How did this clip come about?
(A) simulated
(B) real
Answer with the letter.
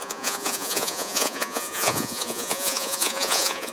A